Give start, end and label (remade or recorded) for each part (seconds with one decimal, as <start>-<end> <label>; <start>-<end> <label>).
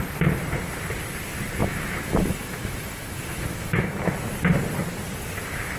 0.0-1.6 recorded; 1.6-4.1 remade; 4.1-5.8 recorded